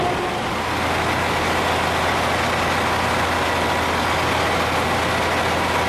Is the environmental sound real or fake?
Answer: real